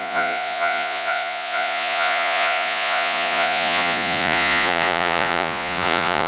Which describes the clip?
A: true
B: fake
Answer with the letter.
B